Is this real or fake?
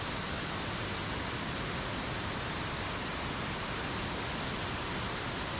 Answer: real